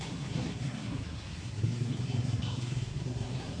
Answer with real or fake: fake